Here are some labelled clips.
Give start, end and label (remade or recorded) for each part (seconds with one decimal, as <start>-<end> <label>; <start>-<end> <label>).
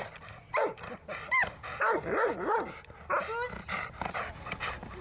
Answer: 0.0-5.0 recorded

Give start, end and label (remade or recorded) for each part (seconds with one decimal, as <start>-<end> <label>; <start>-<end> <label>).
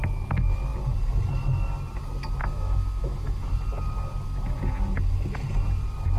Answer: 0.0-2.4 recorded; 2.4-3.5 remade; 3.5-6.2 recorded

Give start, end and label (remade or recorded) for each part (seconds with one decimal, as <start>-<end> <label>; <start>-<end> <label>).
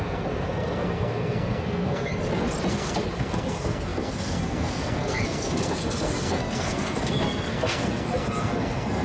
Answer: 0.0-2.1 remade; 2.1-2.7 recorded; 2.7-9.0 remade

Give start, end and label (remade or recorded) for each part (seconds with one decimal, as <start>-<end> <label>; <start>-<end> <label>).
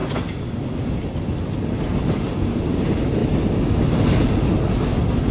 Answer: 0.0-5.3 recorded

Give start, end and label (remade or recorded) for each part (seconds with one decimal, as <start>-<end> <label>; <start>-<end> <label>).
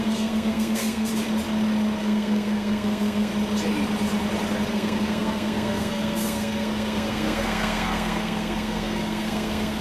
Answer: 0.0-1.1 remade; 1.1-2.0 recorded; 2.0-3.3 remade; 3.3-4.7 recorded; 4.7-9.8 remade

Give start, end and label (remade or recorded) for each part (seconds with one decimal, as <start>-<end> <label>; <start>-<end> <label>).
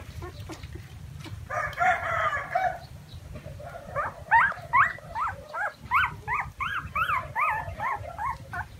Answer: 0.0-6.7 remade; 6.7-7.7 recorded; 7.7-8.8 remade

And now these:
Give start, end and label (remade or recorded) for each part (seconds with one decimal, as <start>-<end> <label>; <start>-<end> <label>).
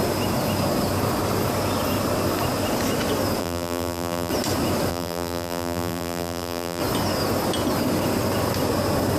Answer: 0.0-3.4 recorded; 3.4-4.3 remade; 4.3-4.9 recorded; 4.9-6.8 remade; 6.8-9.2 recorded